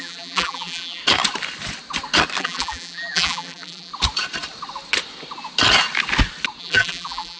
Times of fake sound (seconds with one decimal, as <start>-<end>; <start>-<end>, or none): 0.0-1.0; 2.4-3.9; 6.6-7.4